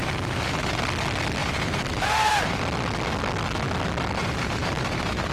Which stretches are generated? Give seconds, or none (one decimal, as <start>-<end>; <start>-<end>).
0.0-0.8; 1.4-2.6; 4.2-5.3